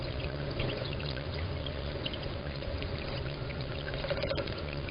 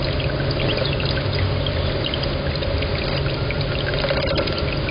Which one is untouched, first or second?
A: second